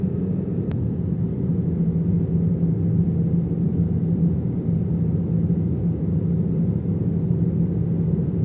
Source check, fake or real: real